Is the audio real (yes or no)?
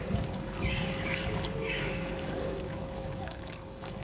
no